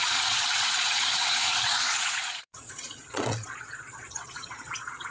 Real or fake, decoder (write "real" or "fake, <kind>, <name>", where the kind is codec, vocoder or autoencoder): fake, vocoder, Vocos